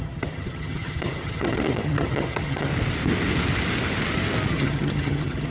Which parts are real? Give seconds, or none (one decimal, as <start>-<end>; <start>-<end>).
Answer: 2.7-4.5